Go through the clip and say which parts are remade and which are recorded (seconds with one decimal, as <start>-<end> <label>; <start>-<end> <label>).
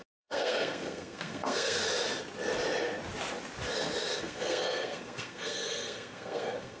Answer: 0.0-1.8 remade; 1.8-4.2 recorded; 4.2-6.8 remade